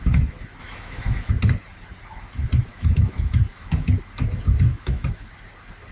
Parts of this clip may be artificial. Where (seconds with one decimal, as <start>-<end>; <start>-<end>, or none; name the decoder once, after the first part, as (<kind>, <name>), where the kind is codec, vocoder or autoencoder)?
0.6-1.3 (autoencoder, DAC-VAE); 2.7-3.9; 4.7-5.3